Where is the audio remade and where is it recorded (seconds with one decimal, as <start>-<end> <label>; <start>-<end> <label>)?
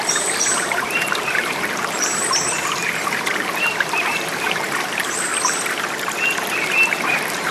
0.0-5.3 remade; 5.3-6.6 recorded; 6.6-7.5 remade